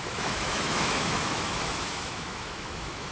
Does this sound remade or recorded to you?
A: remade